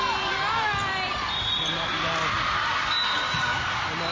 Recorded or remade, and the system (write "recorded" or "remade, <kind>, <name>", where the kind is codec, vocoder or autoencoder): recorded